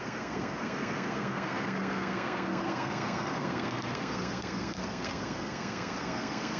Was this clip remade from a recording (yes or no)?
yes